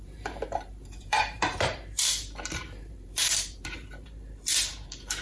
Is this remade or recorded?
remade